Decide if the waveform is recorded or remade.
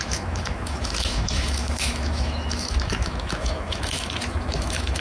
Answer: remade